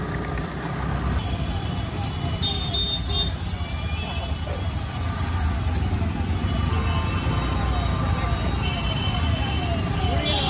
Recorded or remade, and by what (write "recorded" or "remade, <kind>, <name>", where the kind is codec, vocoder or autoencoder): recorded